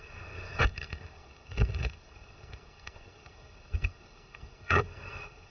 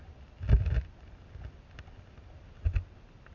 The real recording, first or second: second